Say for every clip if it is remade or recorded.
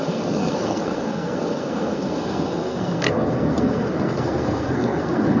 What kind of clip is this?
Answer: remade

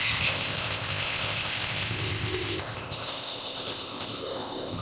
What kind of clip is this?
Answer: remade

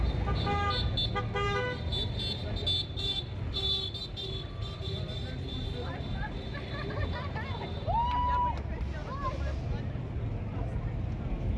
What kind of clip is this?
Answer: recorded